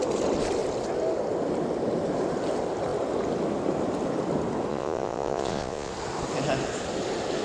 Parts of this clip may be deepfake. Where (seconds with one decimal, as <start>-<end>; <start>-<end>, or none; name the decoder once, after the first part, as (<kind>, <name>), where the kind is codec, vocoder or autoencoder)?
4.7-5.9 (vocoder, Vocos)